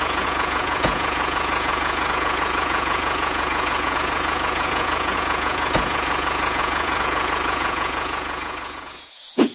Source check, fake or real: fake